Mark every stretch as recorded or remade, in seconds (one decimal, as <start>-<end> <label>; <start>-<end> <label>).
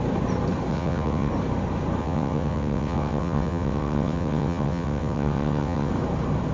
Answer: 0.0-0.7 recorded; 0.7-1.3 remade; 1.3-2.0 recorded; 2.0-5.9 remade; 5.9-6.5 recorded